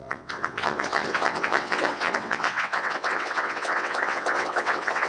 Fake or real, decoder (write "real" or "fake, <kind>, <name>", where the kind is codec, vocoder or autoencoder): fake, vocoder, WaveNeXt